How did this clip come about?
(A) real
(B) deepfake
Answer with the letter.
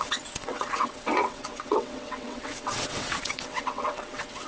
B